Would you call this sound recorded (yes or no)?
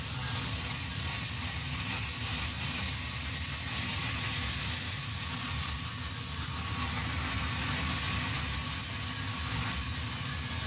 yes